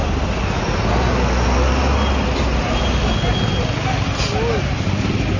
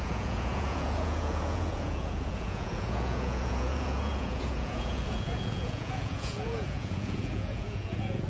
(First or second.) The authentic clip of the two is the first